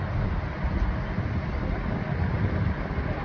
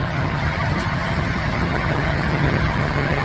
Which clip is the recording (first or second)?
first